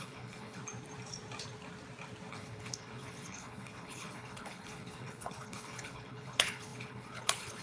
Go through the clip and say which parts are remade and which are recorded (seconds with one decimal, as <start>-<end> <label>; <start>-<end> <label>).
0.0-0.6 remade; 0.6-2.3 recorded; 2.3-7.6 remade